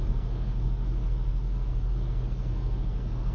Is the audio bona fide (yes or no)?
no